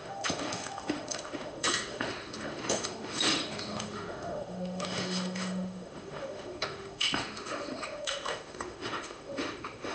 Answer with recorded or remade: remade